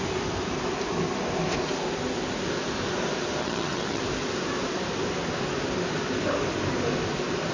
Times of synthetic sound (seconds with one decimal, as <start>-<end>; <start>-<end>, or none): 3.4-4.0